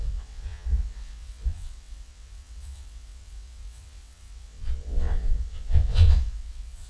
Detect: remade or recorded remade